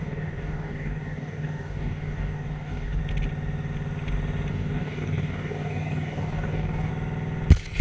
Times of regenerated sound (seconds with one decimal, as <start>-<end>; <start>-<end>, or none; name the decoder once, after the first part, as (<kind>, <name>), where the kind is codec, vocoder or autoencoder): 0.0-3.0 (codec, DAC); 4.5-6.9